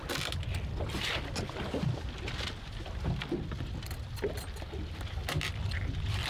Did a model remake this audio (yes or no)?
no